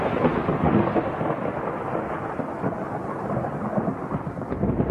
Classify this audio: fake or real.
real